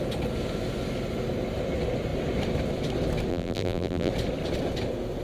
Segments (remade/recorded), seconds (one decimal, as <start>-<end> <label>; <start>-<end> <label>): 0.0-3.3 recorded; 3.3-4.1 remade; 4.1-5.2 recorded